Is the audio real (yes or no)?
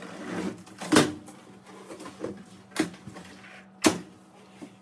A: yes